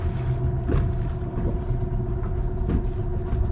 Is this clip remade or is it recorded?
recorded